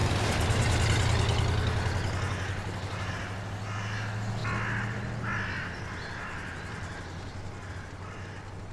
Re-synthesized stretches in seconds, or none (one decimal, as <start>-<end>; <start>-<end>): none